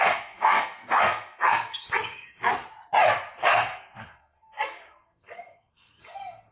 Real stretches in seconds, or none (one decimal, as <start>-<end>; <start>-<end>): 2.4-3.4

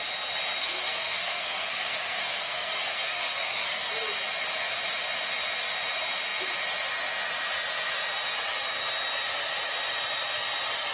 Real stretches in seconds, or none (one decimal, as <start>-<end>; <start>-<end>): 0.0-0.6; 3.9-10.9

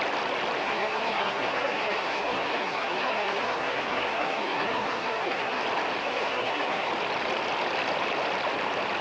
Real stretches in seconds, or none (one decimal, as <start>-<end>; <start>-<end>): 0.0-0.6; 5.6-6.0; 6.9-9.0

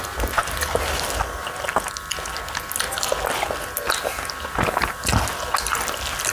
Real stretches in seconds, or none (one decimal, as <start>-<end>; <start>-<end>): 0.0-6.3

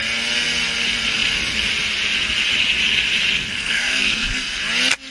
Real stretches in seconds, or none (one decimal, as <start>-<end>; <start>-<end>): 0.0-3.4; 4.6-5.1